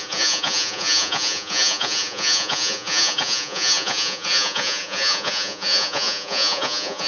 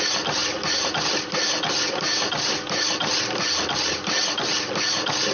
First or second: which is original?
second